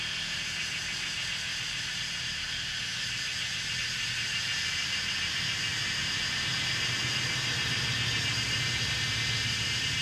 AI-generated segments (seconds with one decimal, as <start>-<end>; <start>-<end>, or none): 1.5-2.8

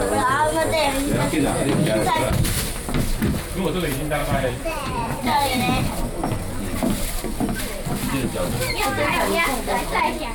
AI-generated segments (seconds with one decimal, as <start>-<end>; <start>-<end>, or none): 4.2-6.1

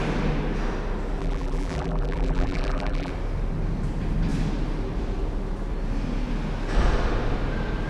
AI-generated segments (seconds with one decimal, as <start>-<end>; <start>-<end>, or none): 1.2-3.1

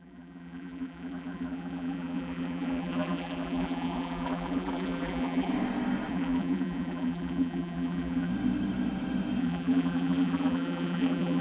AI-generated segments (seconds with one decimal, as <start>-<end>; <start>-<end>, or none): 0.0-5.5; 6.1-8.3; 9.4-11.4

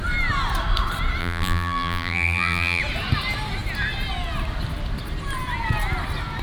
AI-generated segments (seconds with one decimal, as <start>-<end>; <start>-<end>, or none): 1.2-2.8

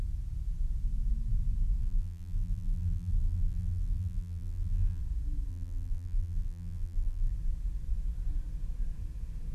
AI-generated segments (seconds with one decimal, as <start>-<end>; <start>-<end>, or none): 1.8-5.0; 5.5-7.3

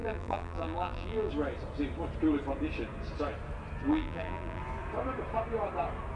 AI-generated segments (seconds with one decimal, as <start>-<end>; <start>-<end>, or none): 0.0-1.3; 3.9-4.6

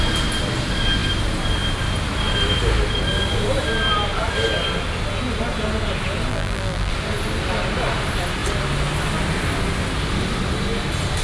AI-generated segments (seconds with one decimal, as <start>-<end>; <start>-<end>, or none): 6.3-6.9